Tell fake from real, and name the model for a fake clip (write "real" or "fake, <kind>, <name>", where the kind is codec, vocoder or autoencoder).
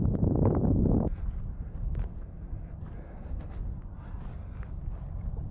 real